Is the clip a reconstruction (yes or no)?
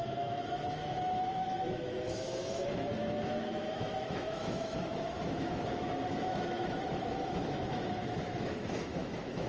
yes